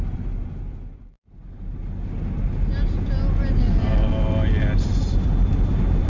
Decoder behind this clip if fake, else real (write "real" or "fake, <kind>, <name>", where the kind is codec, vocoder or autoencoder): real